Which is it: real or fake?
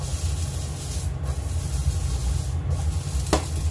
real